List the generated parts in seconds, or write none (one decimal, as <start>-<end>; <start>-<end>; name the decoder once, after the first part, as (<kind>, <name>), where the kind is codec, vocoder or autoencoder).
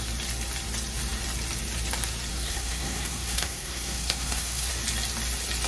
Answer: 2.3-4.7 (codec, SNAC)